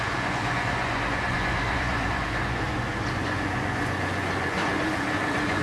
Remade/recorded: remade